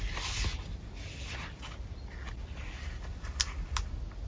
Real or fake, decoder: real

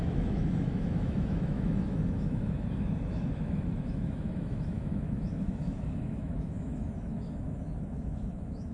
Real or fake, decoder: fake, autoencoder, DAC-VAE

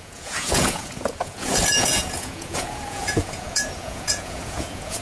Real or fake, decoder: fake, vocoder, Vocos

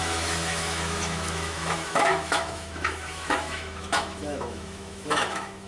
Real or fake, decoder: fake, autoencoder, DAC-VAE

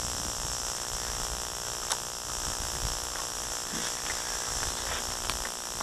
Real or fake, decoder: real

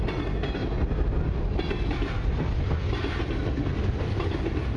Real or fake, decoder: real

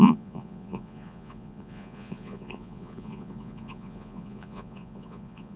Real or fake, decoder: fake, vocoder, Vocos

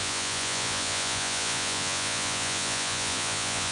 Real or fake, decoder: fake, vocoder, Vocos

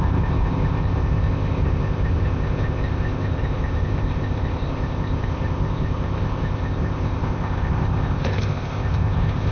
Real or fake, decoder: fake, codec, ZipCodec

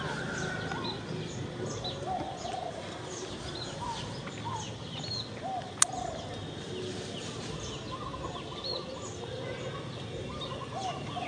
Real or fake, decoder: real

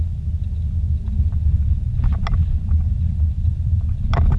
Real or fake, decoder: real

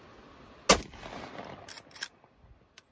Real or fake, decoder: real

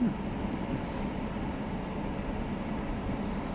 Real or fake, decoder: real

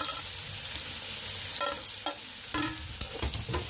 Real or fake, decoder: real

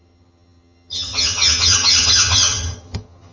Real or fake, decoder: fake, vocoder, HiFi-GAN